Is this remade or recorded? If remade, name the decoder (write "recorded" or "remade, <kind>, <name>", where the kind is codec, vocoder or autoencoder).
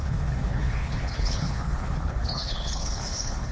remade, codec, HILCodec